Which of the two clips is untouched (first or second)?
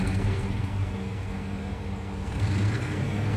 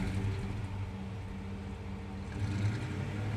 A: second